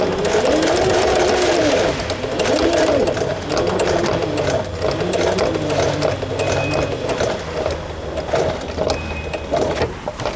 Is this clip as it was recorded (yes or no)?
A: yes